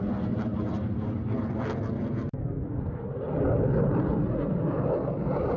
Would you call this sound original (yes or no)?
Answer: yes